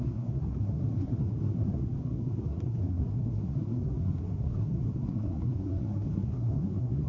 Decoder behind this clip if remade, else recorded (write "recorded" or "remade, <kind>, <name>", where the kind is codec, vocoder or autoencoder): remade, codec, SNAC